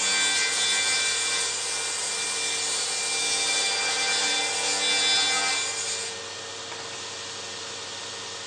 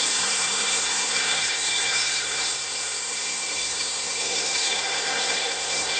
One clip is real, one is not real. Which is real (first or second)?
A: first